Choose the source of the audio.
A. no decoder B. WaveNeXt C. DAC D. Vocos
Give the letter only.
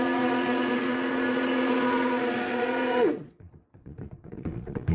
D